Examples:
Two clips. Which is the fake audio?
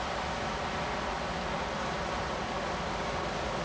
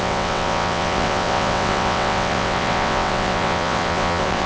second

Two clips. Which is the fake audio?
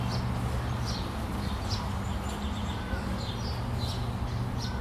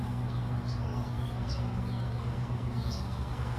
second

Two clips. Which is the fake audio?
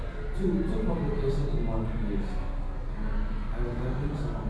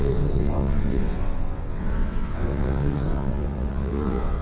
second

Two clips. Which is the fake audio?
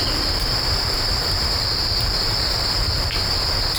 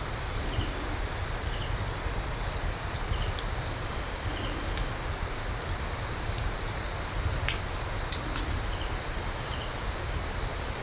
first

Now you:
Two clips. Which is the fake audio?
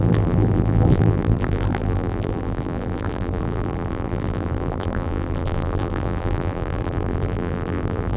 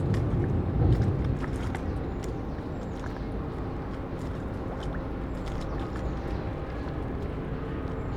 first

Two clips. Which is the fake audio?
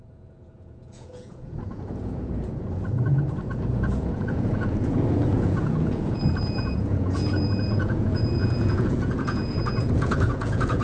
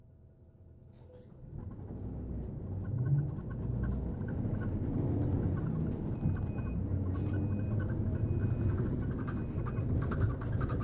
first